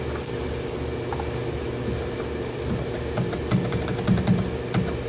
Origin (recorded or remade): recorded